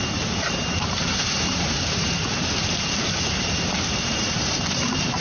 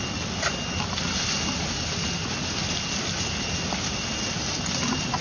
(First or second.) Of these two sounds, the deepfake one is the first